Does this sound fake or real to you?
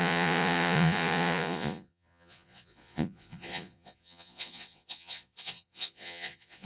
fake